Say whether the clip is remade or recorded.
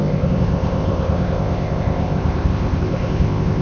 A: remade